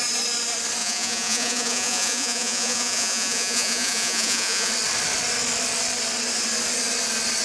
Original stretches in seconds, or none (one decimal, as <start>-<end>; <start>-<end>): 0.0-0.8; 4.7-7.4

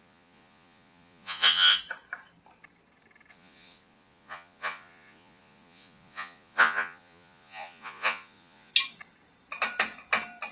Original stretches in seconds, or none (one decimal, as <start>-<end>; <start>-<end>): 1.8-3.3; 8.7-10.5

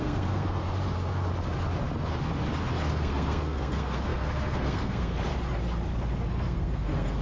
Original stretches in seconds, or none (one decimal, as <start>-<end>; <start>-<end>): 0.6-2.9; 5.3-6.3

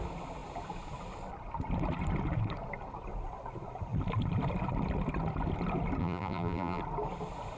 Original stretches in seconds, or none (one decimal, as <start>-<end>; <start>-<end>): 0.0-6.0; 6.8-7.6

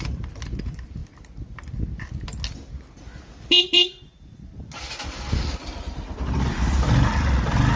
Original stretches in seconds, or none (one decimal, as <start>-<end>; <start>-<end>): 0.0-7.8